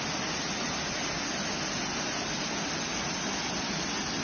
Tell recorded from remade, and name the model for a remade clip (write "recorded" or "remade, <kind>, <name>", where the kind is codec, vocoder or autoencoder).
recorded